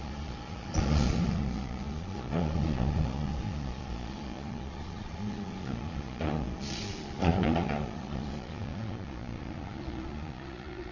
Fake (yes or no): yes